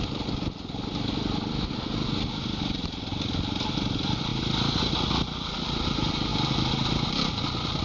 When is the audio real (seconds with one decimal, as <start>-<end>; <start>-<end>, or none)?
0.0-7.8